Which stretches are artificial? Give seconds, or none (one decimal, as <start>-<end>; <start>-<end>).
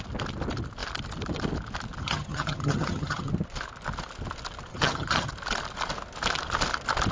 2.0-3.3; 4.7-5.3